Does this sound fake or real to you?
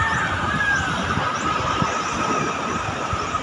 real